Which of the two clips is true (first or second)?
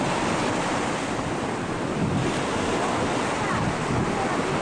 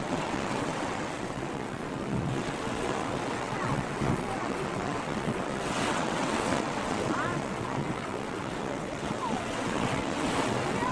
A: first